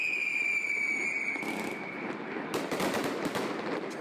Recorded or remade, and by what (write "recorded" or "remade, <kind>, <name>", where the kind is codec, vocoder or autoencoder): recorded